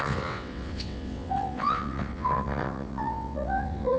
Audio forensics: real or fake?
fake